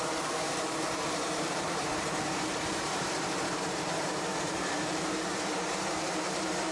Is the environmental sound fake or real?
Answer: fake